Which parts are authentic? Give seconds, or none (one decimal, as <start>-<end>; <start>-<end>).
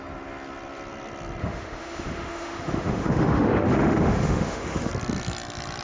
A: 0.0-1.4; 4.9-5.8